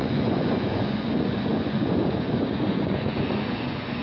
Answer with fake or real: fake